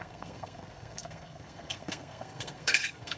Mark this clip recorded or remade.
remade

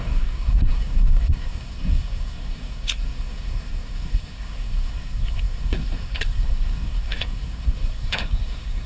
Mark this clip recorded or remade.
remade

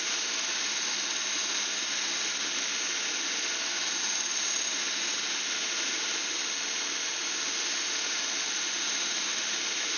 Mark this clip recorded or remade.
recorded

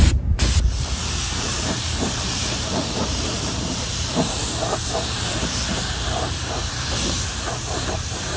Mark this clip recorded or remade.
remade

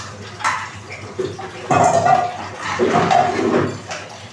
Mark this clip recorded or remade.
recorded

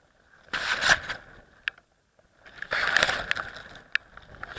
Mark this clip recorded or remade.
recorded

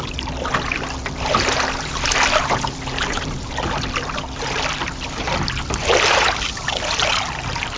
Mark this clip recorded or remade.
recorded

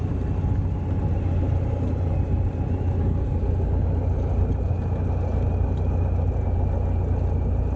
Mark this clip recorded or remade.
recorded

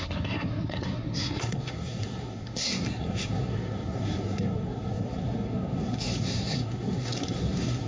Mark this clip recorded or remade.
remade